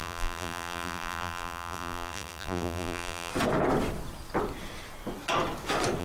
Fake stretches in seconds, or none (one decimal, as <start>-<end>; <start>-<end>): 0.0-3.3